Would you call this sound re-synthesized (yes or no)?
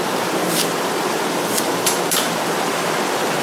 yes